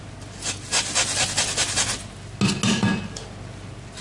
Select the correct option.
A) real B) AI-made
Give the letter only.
A